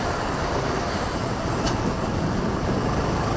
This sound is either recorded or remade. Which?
recorded